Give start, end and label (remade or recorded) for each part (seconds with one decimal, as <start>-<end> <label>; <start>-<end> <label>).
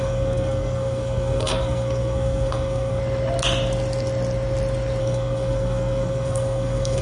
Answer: 0.0-3.0 remade; 3.0-5.0 recorded; 5.0-7.0 remade